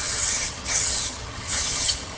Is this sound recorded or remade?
remade